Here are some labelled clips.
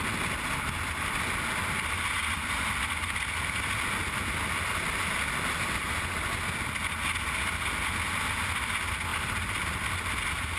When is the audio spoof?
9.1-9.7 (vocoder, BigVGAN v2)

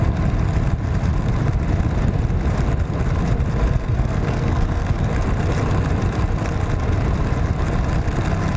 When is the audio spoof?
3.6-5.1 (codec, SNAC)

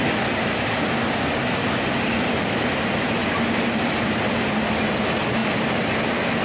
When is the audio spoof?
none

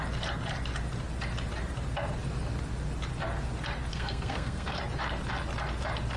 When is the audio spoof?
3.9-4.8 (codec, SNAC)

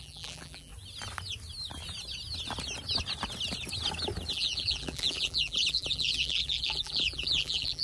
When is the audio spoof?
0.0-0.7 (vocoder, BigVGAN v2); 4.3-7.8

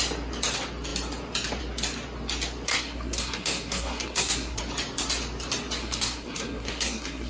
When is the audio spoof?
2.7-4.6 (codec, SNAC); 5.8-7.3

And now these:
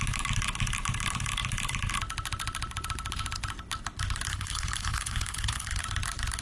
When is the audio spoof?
4.3-5.8 (codec, HILCodec)

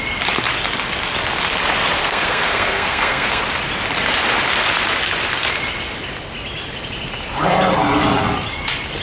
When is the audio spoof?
2.0-3.4 (codec, SNAC)